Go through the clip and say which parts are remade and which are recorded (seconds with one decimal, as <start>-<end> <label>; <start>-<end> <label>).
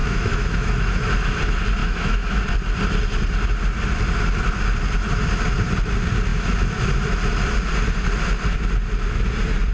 0.0-1.1 remade; 1.1-1.8 recorded; 1.8-2.4 remade; 2.4-9.7 recorded